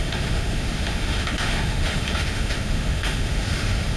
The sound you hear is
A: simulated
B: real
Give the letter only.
A